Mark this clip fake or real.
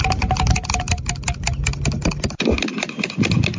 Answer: real